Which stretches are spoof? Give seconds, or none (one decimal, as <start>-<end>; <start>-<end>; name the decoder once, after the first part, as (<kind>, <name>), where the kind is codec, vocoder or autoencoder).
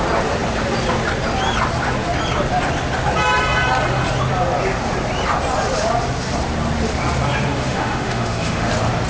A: 7.5-8.7 (autoencoder, DAC-VAE)